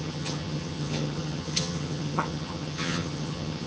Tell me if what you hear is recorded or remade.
remade